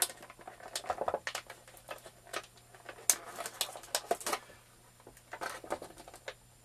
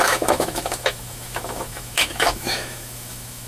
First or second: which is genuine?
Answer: first